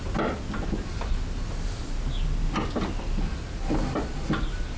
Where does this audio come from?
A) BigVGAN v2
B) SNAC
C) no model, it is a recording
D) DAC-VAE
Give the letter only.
C